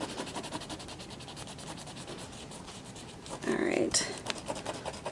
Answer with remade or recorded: recorded